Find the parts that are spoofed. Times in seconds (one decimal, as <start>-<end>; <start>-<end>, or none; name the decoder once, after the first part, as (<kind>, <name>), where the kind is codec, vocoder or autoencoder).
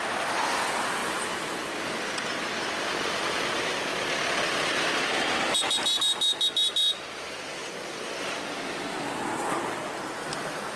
7.6-9.0 (vocoder, BigVGAN v2)